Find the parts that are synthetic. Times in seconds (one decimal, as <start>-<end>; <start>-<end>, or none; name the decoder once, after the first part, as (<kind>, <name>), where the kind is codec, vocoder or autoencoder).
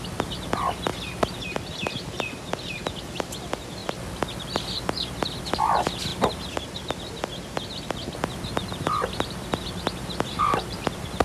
0.0-0.9 (vocoder, BigVGAN v2); 1.7-3.8; 5.4-6.1; 8.6-11.2